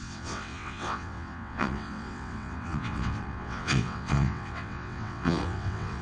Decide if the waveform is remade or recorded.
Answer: remade